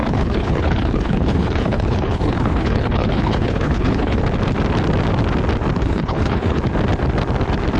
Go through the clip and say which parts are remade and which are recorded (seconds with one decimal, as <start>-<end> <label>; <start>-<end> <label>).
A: 0.0-4.2 remade; 4.2-5.8 recorded; 5.8-6.6 remade; 6.6-7.8 recorded